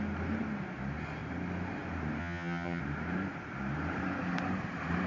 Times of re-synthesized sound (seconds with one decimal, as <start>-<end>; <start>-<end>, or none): 2.2-2.8